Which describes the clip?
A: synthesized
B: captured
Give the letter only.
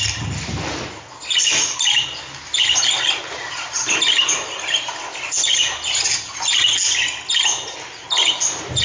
B